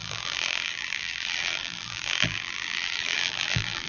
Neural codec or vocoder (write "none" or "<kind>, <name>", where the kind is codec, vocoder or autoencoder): vocoder, BigVGAN v2